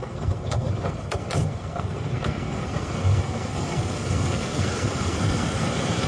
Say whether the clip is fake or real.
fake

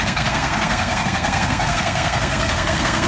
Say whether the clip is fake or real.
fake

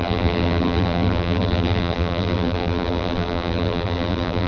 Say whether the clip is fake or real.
fake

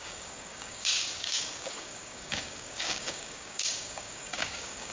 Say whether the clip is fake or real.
fake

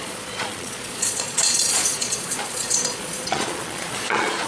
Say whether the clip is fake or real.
fake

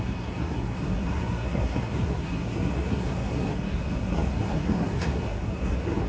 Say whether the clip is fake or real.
fake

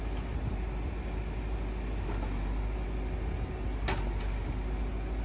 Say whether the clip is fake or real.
real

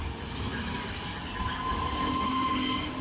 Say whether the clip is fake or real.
real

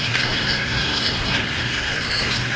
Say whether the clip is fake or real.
fake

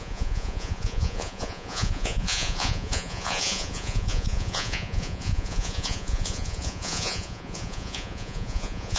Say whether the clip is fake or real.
fake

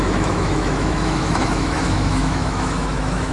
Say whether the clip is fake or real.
fake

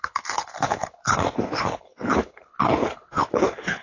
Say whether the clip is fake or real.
fake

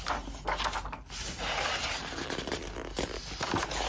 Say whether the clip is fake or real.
real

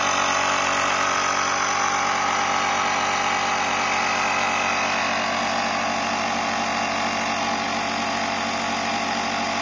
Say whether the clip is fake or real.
real